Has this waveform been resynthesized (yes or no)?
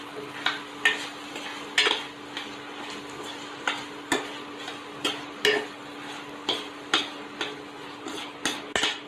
no